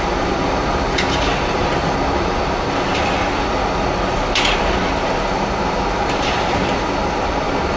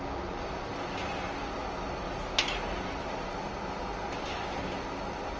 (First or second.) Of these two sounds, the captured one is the second